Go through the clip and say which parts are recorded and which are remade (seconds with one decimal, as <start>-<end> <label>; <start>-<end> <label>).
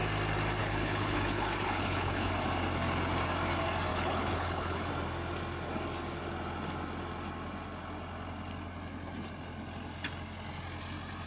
0.0-0.6 recorded; 0.6-2.3 remade; 2.3-3.9 recorded; 3.9-4.9 remade; 4.9-11.3 recorded